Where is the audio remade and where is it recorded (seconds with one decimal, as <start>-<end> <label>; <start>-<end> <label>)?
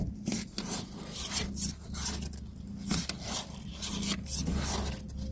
0.0-5.3 recorded